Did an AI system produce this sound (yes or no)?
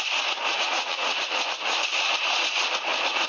yes